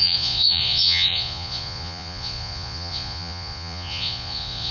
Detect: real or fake fake